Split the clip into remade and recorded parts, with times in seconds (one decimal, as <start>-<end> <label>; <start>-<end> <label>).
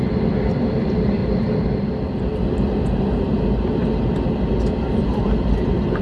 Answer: 0.0-1.2 remade; 1.2-4.8 recorded; 4.8-6.0 remade